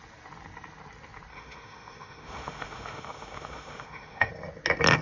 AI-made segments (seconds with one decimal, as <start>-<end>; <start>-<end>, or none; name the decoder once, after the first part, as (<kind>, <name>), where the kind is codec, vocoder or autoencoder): 1.3-4.3 (autoencoder, DAC-VAE)

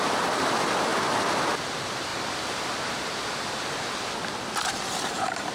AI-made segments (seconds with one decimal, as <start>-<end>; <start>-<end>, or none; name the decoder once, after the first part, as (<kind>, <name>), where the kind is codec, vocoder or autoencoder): none

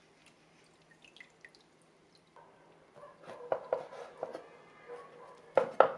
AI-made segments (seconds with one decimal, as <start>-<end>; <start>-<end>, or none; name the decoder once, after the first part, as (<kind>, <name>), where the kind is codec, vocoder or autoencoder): none

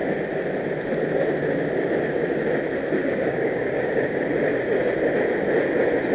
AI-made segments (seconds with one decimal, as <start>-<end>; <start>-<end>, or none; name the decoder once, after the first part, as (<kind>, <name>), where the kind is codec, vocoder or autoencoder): 3.0-4.2 (codec, DAC)

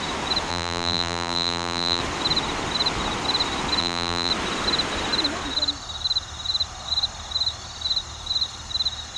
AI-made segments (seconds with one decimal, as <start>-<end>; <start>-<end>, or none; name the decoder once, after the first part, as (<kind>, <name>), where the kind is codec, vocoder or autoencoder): 0.5-2.0 (vocoder, BigVGAN v2); 3.8-4.3

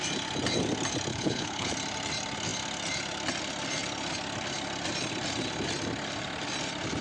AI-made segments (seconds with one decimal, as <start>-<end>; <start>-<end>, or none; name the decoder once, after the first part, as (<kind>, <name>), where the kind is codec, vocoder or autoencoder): 1.1-1.7 (codec, HILCodec)

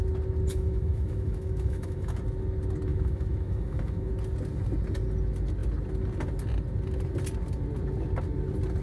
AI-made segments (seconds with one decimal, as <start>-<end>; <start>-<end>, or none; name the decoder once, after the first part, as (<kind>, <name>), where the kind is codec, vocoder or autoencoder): 0.5-2.2 (autoencoder, DAC-VAE); 2.9-4.1